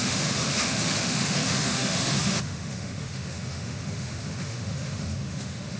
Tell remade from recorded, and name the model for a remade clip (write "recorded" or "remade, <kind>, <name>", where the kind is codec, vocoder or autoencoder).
remade, autoencoder, DAC-VAE